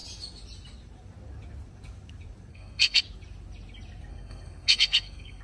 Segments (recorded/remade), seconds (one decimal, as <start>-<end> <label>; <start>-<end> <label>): 0.0-2.5 recorded; 2.5-3.0 remade; 3.0-4.1 recorded; 4.1-5.4 remade